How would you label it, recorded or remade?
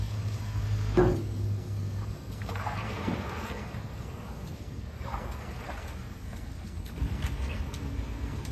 remade